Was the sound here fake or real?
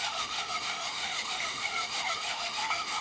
fake